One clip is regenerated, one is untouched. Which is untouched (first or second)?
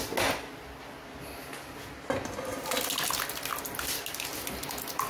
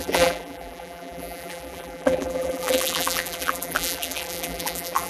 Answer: first